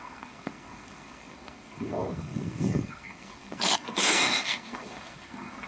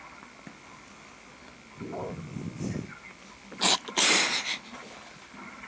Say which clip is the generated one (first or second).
first